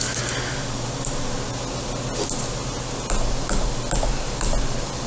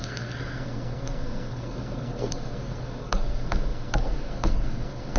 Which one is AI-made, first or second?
second